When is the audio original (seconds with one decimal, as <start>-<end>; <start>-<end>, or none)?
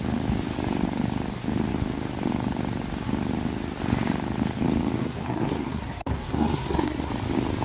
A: 0.0-5.0; 7.1-7.6